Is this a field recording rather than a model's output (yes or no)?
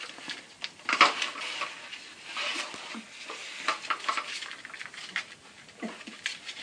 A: yes